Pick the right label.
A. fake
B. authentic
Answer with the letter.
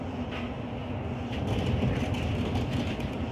B